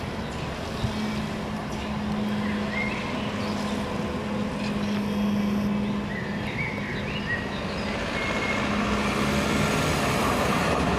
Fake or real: real